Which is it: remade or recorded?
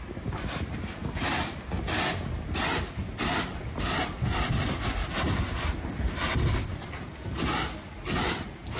recorded